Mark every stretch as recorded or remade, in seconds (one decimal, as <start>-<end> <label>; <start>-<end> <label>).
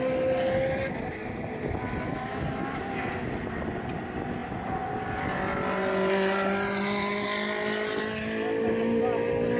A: 0.0-9.6 recorded